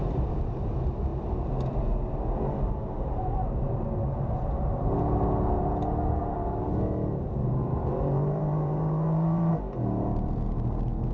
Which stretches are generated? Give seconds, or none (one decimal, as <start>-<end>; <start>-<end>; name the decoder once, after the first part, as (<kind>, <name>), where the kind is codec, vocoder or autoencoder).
7.6-9.5 (vocoder, BigVGAN v2)